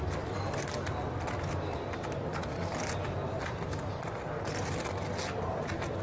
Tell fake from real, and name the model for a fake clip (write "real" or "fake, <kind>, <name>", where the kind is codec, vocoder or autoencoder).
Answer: real